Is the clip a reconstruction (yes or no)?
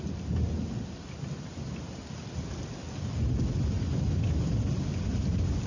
no